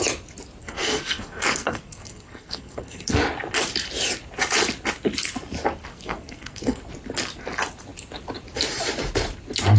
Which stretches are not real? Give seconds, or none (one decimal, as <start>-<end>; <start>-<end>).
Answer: 0.6-3.2; 5.9-6.9